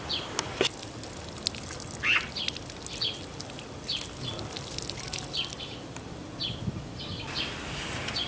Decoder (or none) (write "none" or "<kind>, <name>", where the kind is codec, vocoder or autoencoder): none